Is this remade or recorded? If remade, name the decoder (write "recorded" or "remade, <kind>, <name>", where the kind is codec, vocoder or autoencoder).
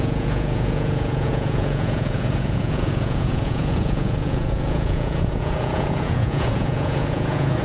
remade, vocoder, Vocos